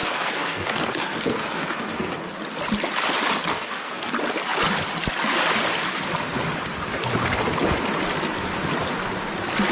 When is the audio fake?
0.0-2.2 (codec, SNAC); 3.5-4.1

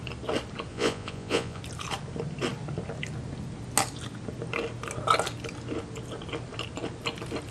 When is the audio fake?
0.7-1.6 (vocoder, Vocos)

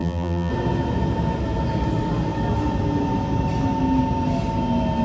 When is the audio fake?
0.0-0.5 (vocoder, BigVGAN v2)

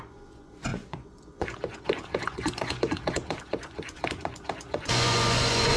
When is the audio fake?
0.0-5.8 (vocoder, Vocos)

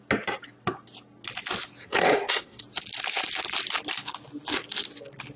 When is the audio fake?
1.8-2.6 (codec, SNAC)

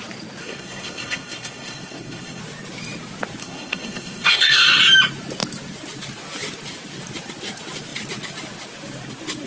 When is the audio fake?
0.4-2.4 (codec, SNAC); 3.4-4.8

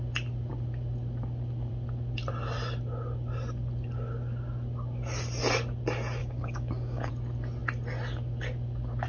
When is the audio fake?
6.2-7.1 (codec, DAC)

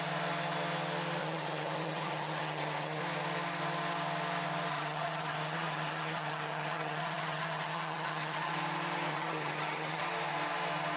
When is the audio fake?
1.2-3.0 (vocoder, HiFi-GAN); 4.7-8.5; 9.1-10.0